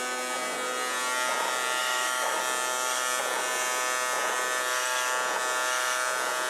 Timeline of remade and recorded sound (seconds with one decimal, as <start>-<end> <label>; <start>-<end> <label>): 0.0-1.8 recorded; 1.8-2.4 remade; 2.4-6.5 recorded